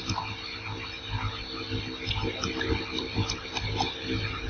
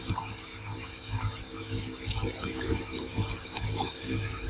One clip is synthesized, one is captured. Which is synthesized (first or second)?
second